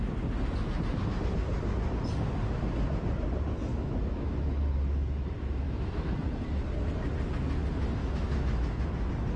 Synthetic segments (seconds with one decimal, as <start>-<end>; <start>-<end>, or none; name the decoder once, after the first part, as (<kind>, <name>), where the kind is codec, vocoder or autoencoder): 3.7-6.0 (autoencoder, DAC-VAE); 8.0-8.9

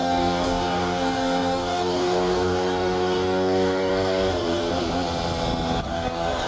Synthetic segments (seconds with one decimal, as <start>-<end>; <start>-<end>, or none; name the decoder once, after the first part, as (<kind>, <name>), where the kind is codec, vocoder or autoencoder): 0.0-4.6 (codec, DAC); 5.8-6.5

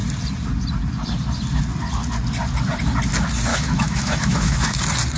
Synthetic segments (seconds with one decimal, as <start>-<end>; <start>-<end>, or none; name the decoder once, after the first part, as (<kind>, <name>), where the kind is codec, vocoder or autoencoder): 3.5-4.8 (autoencoder, DAC-VAE)

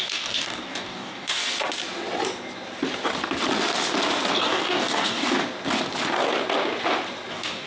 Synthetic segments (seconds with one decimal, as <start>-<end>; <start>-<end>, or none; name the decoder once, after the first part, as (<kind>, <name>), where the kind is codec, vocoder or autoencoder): 0.0-1.4 (codec, DAC); 4.3-5.4; 7.3-7.7

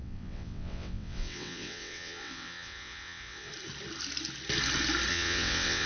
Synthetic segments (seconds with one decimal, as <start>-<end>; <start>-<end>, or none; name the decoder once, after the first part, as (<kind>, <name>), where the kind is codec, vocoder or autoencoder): 0.0-3.5 (vocoder, WaveNeXt); 5.1-5.9

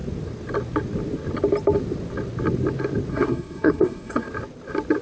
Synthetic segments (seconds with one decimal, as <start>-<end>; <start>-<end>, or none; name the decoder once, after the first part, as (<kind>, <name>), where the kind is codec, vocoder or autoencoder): 3.1-4.3 (codec, SNAC)

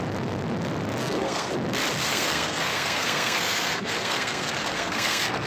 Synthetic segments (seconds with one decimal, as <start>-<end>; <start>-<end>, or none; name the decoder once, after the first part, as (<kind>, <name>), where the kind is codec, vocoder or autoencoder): 1.0-1.5 (codec, SNAC); 2.1-5.5

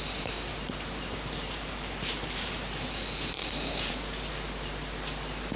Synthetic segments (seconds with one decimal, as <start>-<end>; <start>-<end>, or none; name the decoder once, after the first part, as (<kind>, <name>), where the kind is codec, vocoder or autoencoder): 0.5-3.9 (vocoder, BigVGAN v2)